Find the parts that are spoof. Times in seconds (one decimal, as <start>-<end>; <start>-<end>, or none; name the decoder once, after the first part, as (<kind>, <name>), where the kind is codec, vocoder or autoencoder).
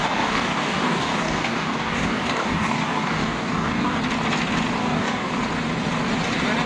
0.0-4.0 (codec, DAC); 4.8-5.3